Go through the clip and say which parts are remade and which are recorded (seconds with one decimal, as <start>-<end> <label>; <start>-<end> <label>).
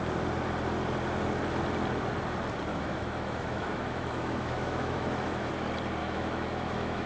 0.0-2.7 recorded; 2.7-5.5 remade; 5.5-6.0 recorded; 6.0-7.1 remade